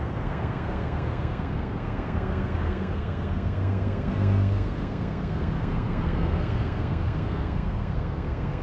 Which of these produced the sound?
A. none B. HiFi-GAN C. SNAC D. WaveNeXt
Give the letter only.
C